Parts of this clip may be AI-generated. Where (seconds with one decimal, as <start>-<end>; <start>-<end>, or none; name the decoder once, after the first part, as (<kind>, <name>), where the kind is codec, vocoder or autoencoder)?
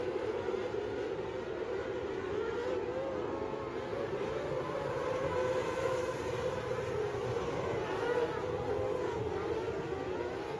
1.8-2.3 (vocoder, BigVGAN v2); 3.9-8.8